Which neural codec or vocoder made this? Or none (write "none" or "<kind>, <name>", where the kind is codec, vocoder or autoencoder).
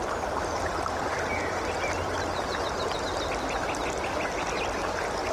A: none